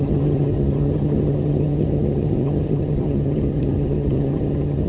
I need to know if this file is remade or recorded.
remade